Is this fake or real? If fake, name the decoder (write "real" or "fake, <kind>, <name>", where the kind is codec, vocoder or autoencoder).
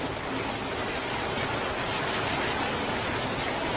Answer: real